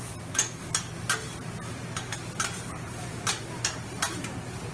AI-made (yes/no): no